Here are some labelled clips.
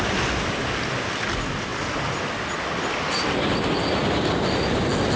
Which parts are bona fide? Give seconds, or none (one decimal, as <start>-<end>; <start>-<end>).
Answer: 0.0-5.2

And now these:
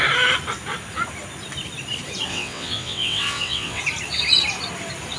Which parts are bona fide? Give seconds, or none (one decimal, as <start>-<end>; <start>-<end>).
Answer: 0.0-2.3; 3.8-5.2

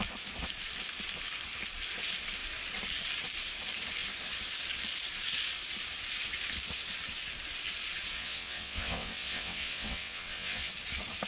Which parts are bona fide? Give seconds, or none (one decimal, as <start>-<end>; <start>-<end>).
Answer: 0.0-8.1; 10.7-11.3